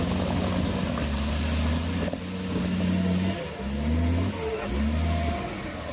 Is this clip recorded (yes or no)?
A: yes